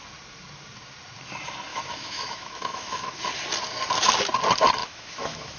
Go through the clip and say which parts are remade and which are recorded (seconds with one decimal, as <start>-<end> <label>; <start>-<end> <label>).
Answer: 0.0-1.7 recorded; 1.7-3.2 remade; 3.2-4.8 recorded; 4.8-5.6 remade